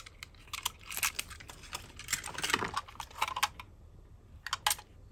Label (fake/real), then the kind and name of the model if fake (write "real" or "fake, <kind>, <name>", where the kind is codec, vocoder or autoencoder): real